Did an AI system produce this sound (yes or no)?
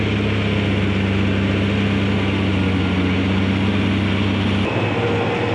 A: no